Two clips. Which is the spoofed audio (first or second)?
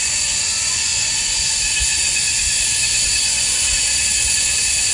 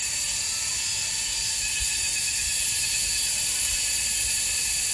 first